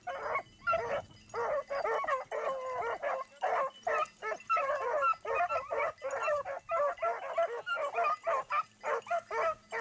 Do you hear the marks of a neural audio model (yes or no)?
no